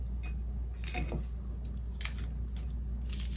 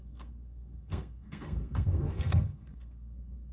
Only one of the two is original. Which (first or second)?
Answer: first